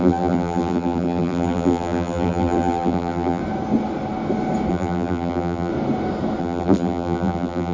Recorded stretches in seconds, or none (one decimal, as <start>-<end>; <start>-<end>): 3.4-4.7; 5.7-6.4